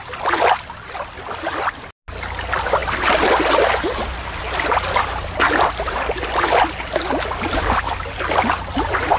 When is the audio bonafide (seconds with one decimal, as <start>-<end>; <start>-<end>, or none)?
0.0-9.2